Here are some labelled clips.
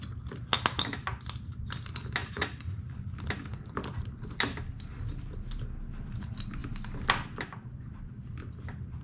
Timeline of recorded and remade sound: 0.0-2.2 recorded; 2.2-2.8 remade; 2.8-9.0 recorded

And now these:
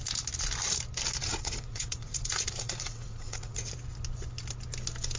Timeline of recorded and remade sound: 0.0-1.2 recorded; 1.2-3.7 remade; 3.7-5.2 recorded

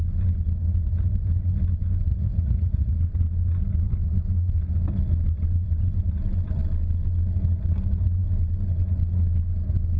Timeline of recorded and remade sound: 0.0-2.1 recorded; 2.1-3.0 remade; 3.0-10.0 recorded

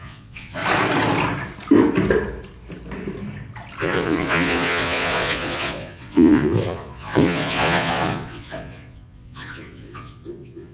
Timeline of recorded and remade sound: 0.0-0.6 remade; 0.6-3.8 recorded; 3.8-10.7 remade

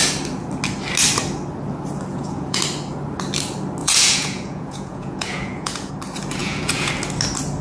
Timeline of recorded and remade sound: 0.0-2.1 recorded; 2.1-2.6 remade; 2.6-3.8 recorded; 3.8-5.9 remade; 5.9-6.4 recorded; 6.4-6.9 remade; 6.9-7.6 recorded

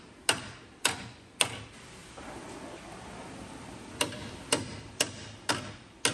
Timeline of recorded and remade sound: 0.0-0.8 recorded; 0.8-1.5 remade; 1.5-6.1 recorded

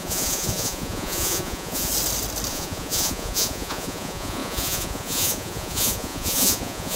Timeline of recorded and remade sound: 0.0-1.9 remade; 1.9-2.5 recorded; 2.5-7.0 remade